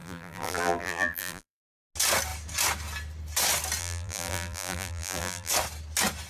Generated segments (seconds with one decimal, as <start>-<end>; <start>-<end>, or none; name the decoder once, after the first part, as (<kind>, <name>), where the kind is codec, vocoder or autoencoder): 0.0-1.6 (vocoder, BigVGAN v2); 3.8-5.5